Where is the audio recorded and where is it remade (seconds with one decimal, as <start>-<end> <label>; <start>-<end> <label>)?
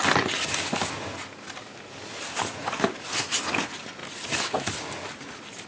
0.0-1.6 recorded; 1.6-2.1 remade; 2.1-5.7 recorded